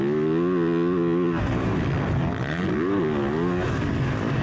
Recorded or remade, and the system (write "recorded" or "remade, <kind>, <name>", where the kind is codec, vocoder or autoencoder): recorded